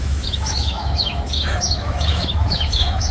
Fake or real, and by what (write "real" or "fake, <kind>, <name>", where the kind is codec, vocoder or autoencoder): fake, autoencoder, DAC-VAE